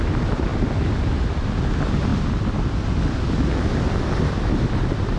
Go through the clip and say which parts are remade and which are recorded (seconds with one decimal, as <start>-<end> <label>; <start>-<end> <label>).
0.0-5.2 recorded